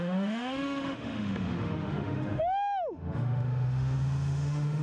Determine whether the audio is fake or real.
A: fake